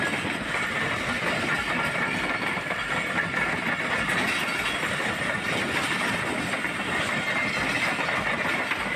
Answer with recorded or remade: recorded